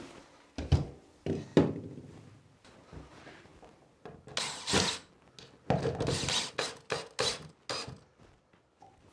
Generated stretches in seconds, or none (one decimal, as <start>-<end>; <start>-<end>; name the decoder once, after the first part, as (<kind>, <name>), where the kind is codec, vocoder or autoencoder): 0.0-1.5 (vocoder, BigVGAN v2); 2.9-3.5; 8.6-9.1